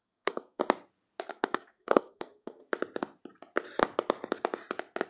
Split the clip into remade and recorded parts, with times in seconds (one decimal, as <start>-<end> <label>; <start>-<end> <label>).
0.0-0.6 remade; 0.6-1.3 recorded; 1.3-2.6 remade; 2.6-5.1 recorded